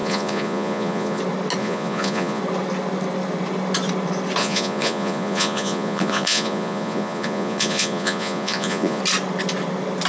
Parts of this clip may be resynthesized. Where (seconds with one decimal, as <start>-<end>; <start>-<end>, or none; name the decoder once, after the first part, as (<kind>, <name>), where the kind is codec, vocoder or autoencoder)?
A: 0.0-1.2 (vocoder, Vocos); 1.6-2.4; 4.4-9.0